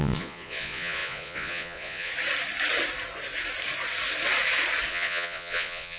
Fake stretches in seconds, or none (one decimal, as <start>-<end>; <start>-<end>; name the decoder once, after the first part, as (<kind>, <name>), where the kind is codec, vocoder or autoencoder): 0.0-2.1 (vocoder, Vocos); 4.9-6.0